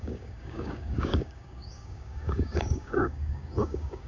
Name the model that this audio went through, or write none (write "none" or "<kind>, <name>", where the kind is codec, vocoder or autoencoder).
codec, DAC